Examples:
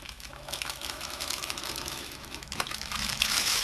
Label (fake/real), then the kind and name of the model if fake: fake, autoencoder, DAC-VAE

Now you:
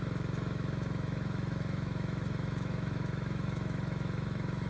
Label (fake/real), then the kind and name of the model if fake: fake, autoencoder, DAC-VAE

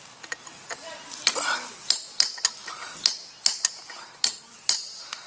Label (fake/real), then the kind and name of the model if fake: real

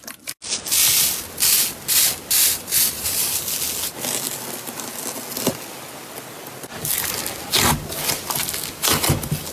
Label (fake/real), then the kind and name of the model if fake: real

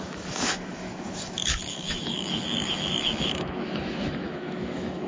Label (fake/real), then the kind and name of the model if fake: fake, autoencoder, DAC-VAE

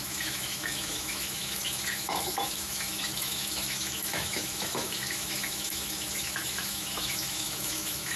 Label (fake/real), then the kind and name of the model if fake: fake, autoencoder, DAC-VAE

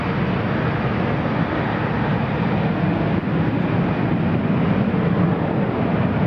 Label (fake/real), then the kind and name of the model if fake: real